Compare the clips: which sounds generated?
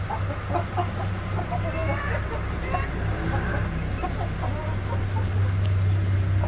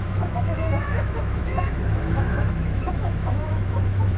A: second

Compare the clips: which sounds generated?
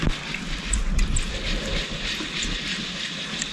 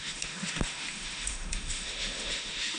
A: second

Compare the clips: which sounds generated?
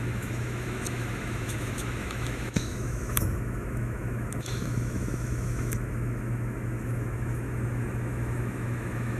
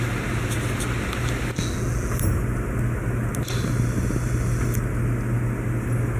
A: first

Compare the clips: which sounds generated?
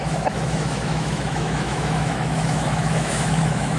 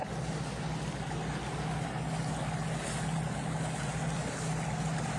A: first